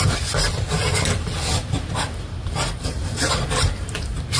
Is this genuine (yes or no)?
yes